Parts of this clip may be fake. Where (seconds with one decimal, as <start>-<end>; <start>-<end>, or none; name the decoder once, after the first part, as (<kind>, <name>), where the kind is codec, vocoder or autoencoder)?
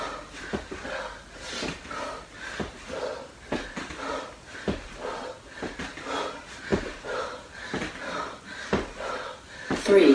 none